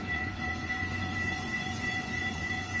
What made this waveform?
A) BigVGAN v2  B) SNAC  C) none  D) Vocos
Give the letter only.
D